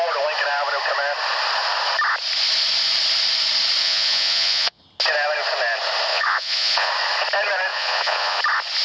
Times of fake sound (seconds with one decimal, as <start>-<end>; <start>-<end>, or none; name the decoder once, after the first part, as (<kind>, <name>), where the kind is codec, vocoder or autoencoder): 3.8-4.8 (vocoder, Vocos); 6.1-6.9; 7.7-8.4